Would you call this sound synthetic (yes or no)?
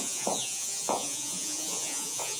yes